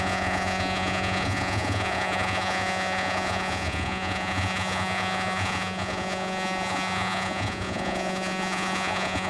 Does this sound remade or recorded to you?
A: remade